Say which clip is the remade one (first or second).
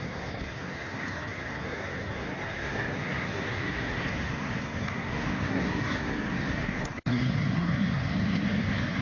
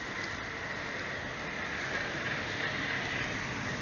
first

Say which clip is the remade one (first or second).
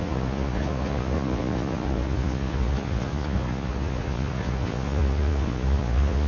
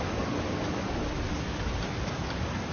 first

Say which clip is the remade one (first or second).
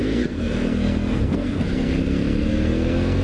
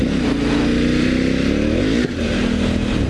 first